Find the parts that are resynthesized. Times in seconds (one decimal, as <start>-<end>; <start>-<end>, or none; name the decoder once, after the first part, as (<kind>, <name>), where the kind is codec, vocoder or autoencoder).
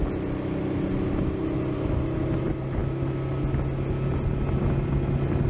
none